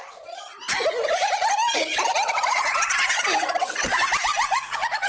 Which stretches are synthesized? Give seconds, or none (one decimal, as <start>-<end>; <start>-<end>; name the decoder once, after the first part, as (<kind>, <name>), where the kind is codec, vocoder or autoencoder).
4.3-5.1 (vocoder, Vocos)